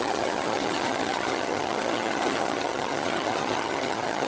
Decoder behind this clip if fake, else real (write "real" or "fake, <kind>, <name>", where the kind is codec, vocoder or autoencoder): fake, vocoder, HiFi-GAN